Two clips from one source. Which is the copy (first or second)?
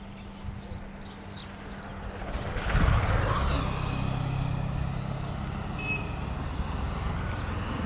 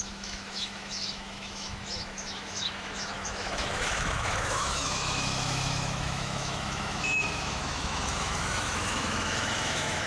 second